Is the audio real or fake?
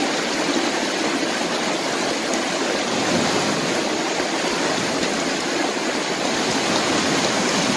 real